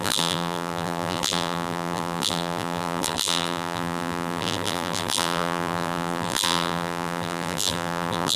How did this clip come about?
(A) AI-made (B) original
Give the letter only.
A